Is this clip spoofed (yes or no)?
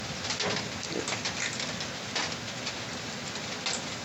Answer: no